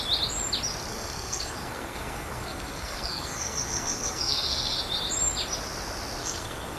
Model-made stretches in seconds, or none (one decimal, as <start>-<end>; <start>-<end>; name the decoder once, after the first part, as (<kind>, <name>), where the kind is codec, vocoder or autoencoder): 0.9-4.8 (codec, SNAC); 6.2-6.8